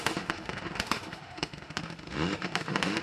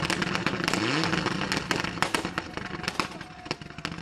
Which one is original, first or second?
second